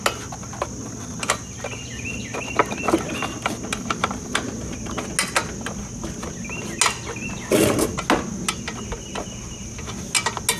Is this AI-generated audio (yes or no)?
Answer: no